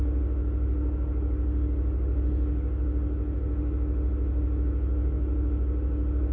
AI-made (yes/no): no